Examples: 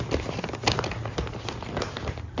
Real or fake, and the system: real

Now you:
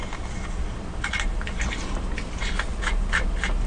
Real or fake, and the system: real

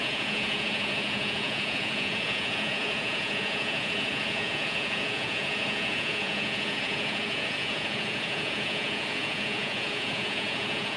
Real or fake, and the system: fake, vocoder, Vocos